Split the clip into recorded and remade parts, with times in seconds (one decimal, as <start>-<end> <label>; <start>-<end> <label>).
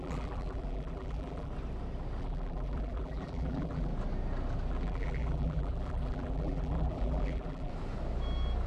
0.0-1.5 remade; 1.5-2.2 recorded; 2.2-3.9 remade; 3.9-4.7 recorded; 4.7-7.7 remade; 7.7-8.7 recorded